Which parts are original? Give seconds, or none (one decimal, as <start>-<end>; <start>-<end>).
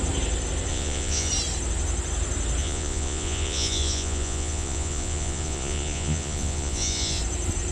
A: 0.0-0.7; 1.3-2.6; 7.2-7.7